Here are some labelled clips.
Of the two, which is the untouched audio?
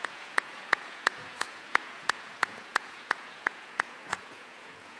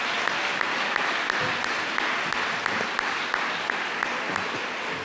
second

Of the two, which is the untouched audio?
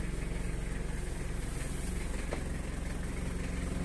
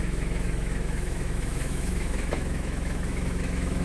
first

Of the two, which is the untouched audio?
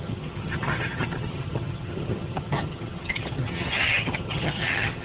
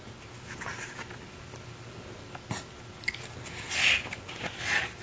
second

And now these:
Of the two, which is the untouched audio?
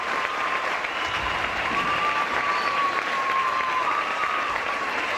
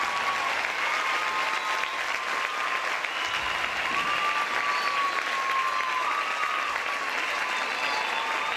second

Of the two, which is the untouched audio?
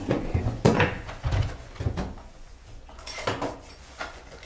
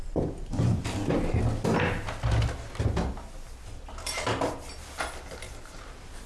second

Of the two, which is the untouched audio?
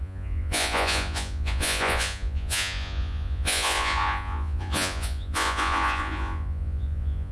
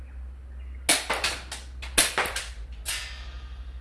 second